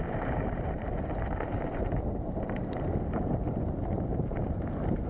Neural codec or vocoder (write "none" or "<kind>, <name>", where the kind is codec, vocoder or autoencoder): vocoder, BigVGAN v2